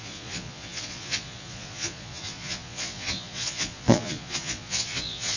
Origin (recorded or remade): remade